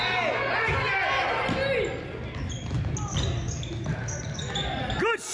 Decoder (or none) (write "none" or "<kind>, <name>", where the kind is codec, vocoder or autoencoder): none